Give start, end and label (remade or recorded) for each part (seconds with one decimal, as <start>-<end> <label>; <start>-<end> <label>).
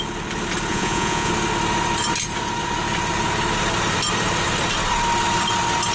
0.0-0.7 recorded; 0.7-1.3 remade; 1.3-5.9 recorded